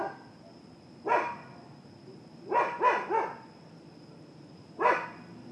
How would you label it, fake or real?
fake